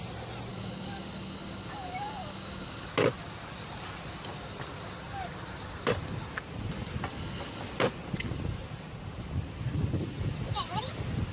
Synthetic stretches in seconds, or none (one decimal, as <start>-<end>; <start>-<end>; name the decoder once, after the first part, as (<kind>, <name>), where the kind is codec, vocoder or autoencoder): 0.5-2.9 (codec, DAC); 7.1-7.6